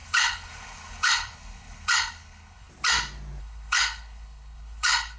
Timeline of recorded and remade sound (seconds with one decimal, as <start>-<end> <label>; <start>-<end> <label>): 0.0-2.7 remade; 2.7-3.4 recorded; 3.4-5.2 remade

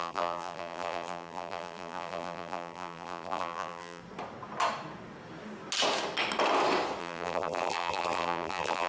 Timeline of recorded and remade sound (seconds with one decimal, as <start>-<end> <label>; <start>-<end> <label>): 0.0-4.0 remade; 4.0-7.0 recorded; 7.0-8.9 remade

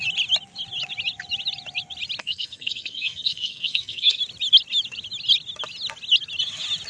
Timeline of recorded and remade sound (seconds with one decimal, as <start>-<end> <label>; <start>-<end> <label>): 0.0-2.2 recorded; 2.2-4.2 remade; 4.2-6.9 recorded

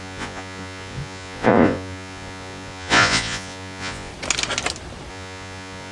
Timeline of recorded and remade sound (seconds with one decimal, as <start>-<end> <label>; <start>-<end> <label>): 0.0-4.1 remade; 4.1-5.1 recorded; 5.1-5.9 remade

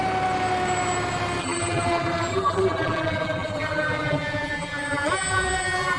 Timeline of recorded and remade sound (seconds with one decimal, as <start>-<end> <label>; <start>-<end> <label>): 0.0-1.4 recorded; 1.4-6.0 remade

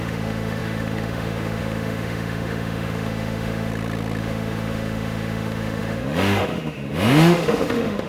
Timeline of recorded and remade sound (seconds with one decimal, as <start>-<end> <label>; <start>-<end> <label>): 0.0-3.7 remade; 3.7-4.2 recorded; 4.2-8.1 remade